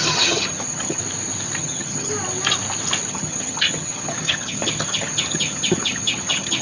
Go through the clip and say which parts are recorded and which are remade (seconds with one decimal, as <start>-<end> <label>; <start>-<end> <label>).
0.0-1.0 remade; 1.0-1.6 recorded; 1.6-2.1 remade; 2.1-3.1 recorded; 3.1-6.6 remade

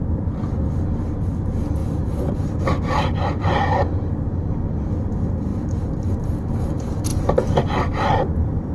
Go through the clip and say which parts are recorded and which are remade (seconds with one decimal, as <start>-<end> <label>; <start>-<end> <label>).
0.0-7.1 recorded; 7.1-8.7 remade

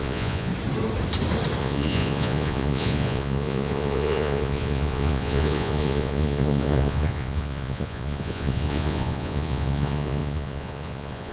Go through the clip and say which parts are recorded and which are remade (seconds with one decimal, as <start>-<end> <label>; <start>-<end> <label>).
0.0-0.5 remade; 0.5-1.6 recorded; 1.6-11.3 remade